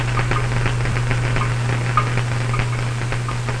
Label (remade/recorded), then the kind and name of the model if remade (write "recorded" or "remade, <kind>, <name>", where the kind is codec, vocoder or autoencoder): recorded